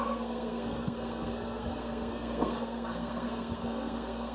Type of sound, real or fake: fake